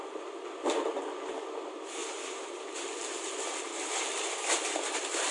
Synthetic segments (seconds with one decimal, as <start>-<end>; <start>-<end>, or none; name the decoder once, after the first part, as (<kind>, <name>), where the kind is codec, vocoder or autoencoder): 0.0-2.0 (vocoder, BigVGAN v2); 3.5-5.3